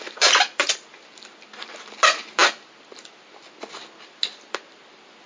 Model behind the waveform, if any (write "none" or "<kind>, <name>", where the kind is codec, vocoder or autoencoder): none